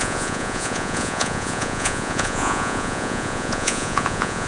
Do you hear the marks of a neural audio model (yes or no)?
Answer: yes